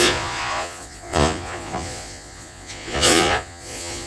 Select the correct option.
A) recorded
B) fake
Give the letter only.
B